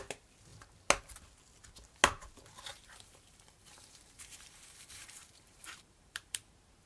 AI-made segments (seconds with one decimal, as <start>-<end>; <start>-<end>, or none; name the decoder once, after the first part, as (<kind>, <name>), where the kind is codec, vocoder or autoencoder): 2.7-6.5 (vocoder, BigVGAN v2)